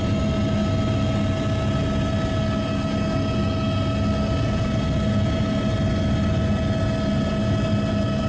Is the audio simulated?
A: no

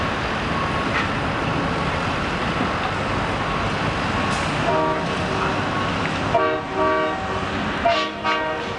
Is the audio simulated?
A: no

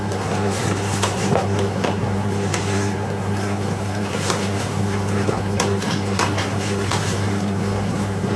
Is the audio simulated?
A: yes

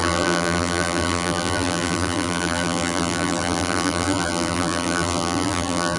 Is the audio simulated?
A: yes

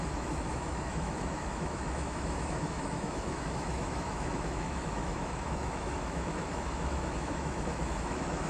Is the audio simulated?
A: yes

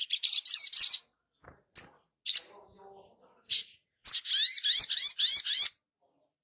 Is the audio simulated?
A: no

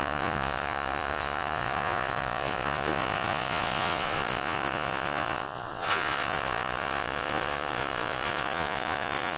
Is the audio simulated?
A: yes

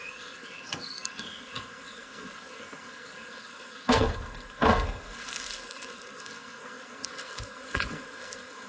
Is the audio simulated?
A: yes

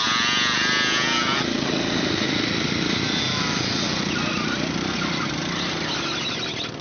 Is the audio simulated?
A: no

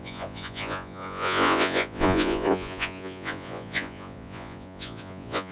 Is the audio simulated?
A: yes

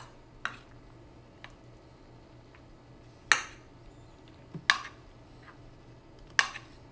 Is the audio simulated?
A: no